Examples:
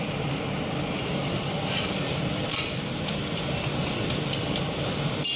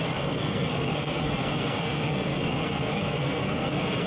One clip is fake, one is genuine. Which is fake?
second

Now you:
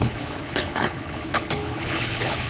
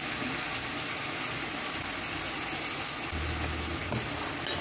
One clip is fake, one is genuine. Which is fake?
first